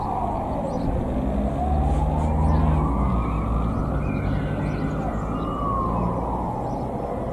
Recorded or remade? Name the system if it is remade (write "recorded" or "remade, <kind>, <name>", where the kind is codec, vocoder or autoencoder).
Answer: recorded